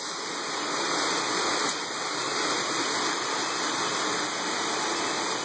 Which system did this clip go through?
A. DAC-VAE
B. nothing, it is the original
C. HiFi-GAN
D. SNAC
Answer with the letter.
B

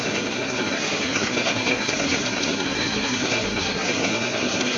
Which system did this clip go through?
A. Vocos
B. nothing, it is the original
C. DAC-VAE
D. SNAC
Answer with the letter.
D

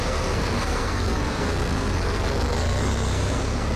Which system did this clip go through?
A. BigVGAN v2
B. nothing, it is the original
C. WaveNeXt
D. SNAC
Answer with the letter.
D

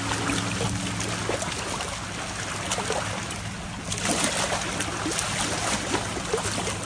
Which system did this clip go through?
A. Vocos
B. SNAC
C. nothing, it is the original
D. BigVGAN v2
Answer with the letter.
C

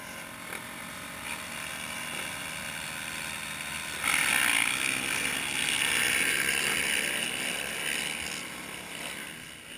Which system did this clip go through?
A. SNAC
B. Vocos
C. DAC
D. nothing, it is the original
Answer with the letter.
D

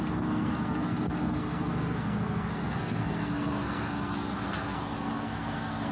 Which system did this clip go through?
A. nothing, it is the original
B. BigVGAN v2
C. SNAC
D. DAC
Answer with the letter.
C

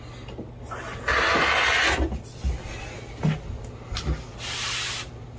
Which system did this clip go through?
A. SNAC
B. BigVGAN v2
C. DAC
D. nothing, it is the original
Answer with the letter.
D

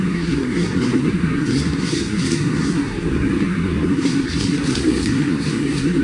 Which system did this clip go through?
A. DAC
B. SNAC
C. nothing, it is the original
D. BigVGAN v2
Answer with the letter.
B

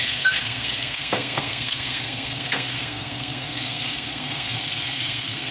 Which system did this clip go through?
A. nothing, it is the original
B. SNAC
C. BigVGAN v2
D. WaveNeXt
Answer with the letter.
B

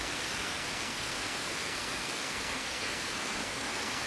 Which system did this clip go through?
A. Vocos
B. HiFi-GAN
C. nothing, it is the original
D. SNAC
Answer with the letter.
D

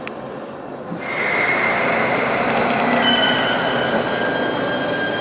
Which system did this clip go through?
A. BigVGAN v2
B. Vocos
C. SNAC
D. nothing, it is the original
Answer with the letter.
D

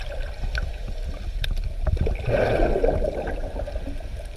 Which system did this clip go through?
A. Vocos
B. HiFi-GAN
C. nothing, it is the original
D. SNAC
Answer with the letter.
C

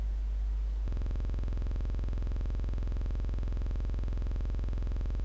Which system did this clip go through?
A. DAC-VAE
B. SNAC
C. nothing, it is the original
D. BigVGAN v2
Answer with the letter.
C